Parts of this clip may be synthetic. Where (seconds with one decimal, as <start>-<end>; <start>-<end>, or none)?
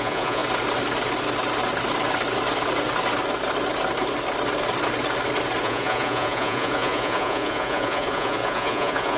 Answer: 0.0-0.4; 5.6-9.2